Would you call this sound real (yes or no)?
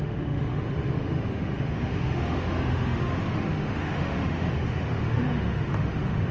no